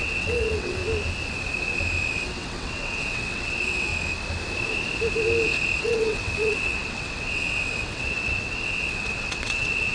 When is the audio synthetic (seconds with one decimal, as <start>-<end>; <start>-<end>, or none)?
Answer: 0.0-0.8; 2.1-3.9; 5.8-9.9